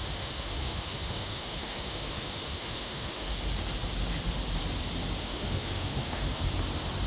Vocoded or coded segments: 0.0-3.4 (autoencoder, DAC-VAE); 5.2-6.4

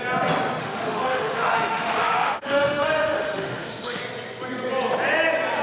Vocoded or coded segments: 0.6-4.0 (autoencoder, DAC-VAE)

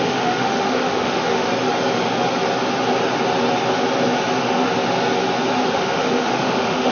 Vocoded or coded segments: 0.0-1.5 (autoencoder, DAC-VAE); 5.6-6.9

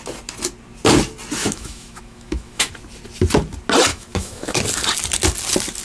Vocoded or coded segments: 1.4-2.7 (autoencoder, DAC-VAE); 3.9-4.6

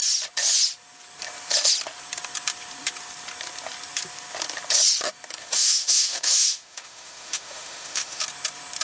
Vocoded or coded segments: 5.4-8.2 (autoencoder, DAC-VAE)